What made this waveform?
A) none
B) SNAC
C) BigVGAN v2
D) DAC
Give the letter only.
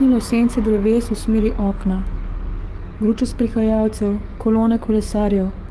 D